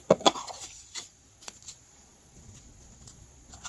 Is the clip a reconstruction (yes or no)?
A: yes